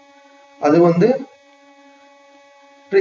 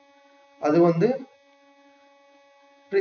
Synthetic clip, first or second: first